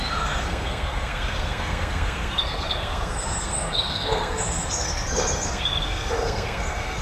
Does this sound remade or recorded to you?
remade